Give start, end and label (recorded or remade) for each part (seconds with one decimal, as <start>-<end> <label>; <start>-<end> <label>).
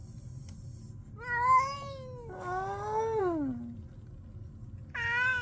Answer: 0.0-5.4 recorded